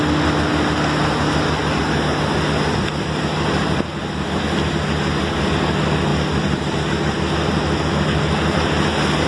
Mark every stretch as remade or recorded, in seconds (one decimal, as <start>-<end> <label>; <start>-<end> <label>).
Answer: 0.0-9.3 recorded